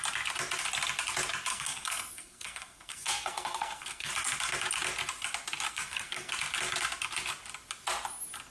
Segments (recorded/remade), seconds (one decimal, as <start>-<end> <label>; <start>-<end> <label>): 0.0-1.5 recorded; 1.5-4.1 remade; 4.1-5.7 recorded; 5.7-6.3 remade; 6.3-8.5 recorded